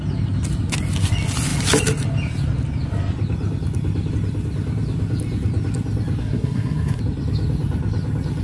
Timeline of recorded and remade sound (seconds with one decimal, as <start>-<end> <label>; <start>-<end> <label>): 0.0-6.2 recorded; 6.2-7.0 remade; 7.0-8.4 recorded